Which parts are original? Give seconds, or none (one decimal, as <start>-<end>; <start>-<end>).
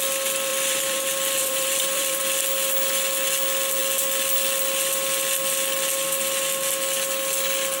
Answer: 0.0-0.5; 2.2-7.8